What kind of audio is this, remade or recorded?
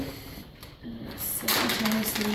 recorded